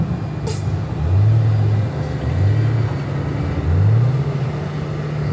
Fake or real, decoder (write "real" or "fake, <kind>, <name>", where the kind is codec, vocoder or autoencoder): real